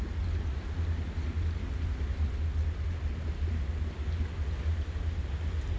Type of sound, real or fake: real